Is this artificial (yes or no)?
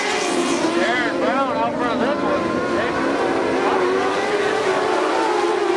no